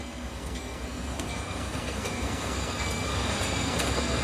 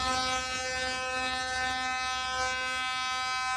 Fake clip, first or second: first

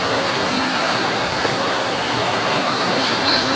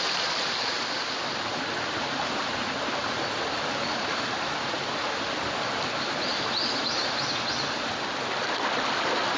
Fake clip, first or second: first